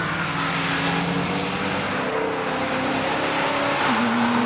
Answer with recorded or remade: recorded